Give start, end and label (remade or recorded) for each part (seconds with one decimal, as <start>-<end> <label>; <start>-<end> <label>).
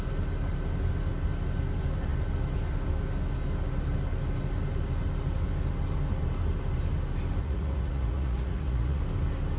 0.0-7.4 recorded; 7.4-9.0 remade; 9.0-9.6 recorded